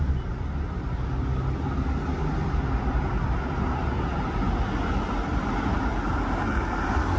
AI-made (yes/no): no